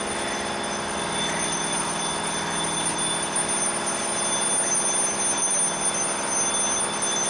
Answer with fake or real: real